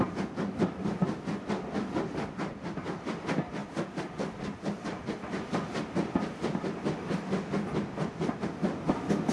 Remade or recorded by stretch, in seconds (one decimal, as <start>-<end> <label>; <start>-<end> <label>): 0.0-9.3 recorded